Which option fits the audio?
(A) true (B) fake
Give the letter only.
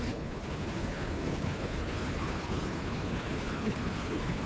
B